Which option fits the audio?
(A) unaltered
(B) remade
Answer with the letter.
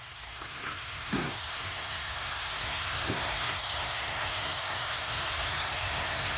B